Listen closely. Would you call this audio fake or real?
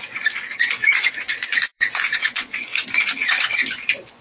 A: fake